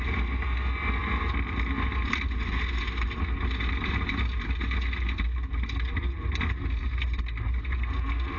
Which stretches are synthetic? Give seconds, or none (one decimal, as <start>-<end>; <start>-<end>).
none